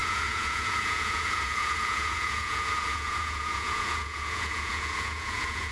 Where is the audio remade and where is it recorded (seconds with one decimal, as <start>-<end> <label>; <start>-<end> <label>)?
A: 0.0-5.7 remade

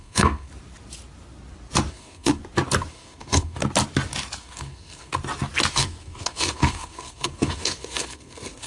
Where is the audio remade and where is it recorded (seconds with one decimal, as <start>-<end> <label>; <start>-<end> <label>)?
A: 0.0-0.5 remade; 0.5-1.9 recorded; 1.9-2.4 remade; 2.4-2.9 recorded; 2.9-3.6 remade; 3.6-4.4 recorded; 4.4-5.1 remade; 5.1-5.7 recorded; 5.7-8.7 remade